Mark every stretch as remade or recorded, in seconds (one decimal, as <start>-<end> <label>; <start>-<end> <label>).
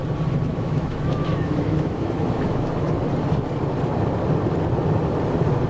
0.0-0.5 recorded; 0.5-2.9 remade; 2.9-5.7 recorded